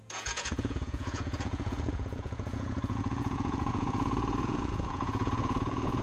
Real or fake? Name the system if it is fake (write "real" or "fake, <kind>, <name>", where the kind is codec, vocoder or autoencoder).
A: fake, vocoder, Vocos